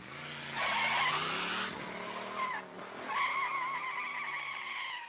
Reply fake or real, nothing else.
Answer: real